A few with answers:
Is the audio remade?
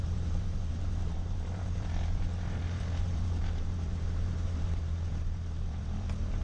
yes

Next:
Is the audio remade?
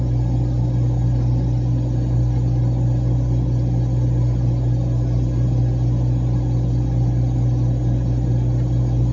no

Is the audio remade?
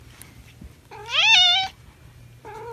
no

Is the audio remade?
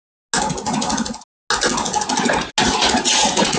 no